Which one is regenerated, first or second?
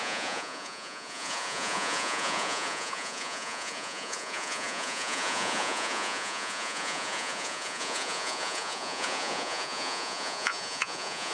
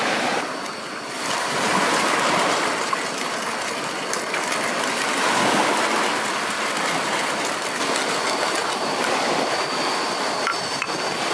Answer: first